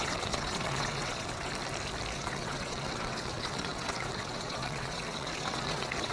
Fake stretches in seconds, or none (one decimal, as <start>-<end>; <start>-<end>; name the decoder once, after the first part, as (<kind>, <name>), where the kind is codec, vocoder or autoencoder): 0.0-1.5 (vocoder, WaveNeXt); 2.1-6.1